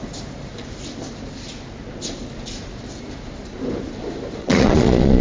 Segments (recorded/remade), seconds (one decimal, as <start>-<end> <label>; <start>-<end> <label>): 0.0-4.4 recorded; 4.4-5.2 remade